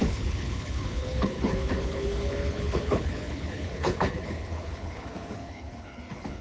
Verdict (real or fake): fake